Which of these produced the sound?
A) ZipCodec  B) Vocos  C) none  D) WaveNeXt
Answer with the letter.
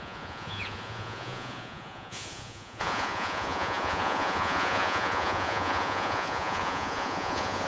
B